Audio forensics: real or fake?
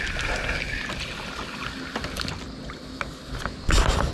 real